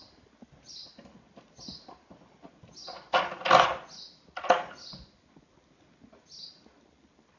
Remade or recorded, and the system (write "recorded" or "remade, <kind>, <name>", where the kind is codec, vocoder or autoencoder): recorded